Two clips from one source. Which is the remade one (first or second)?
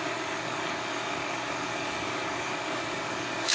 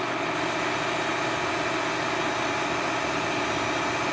first